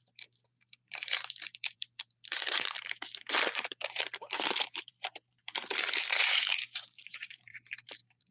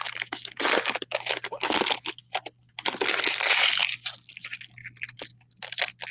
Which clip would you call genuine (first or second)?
second